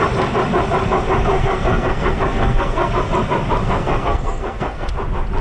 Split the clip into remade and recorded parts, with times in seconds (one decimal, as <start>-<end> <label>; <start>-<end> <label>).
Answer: 0.0-1.3 recorded; 1.3-2.9 remade; 2.9-3.6 recorded; 3.6-4.9 remade; 4.9-5.4 recorded